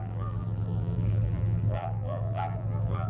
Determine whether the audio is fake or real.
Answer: fake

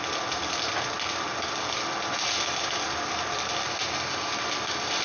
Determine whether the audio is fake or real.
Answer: real